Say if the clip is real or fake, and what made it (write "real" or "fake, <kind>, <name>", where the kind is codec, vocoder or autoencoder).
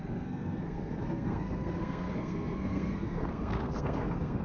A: fake, codec, SNAC